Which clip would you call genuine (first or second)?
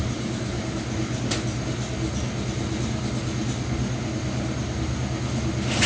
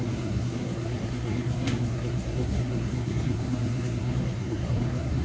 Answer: first